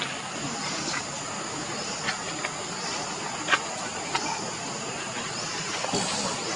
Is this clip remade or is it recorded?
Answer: recorded